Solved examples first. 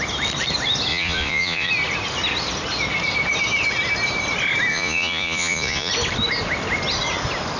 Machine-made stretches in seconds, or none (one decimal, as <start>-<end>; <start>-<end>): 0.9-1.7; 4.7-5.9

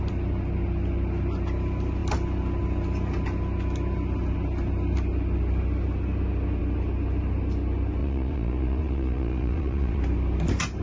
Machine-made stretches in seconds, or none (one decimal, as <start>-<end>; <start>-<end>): 8.0-10.0

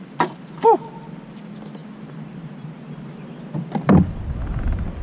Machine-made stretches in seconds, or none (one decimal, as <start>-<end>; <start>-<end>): none

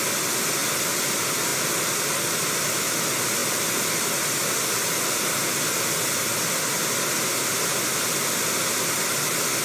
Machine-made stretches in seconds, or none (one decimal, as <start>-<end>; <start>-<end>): none